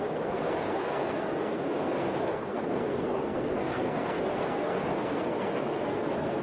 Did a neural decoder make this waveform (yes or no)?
yes